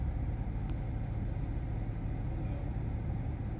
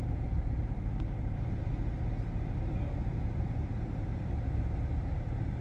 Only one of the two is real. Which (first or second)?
first